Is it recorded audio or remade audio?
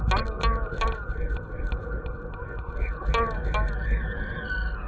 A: recorded